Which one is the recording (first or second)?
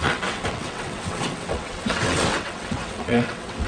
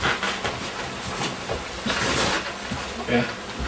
second